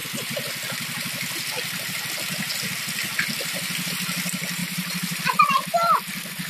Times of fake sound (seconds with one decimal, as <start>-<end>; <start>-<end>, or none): 4.6-5.2